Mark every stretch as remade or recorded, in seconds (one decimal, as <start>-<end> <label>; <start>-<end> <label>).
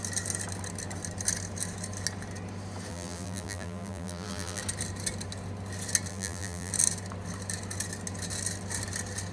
0.0-2.9 recorded; 2.9-4.6 remade; 4.6-6.1 recorded; 6.1-6.7 remade; 6.7-9.3 recorded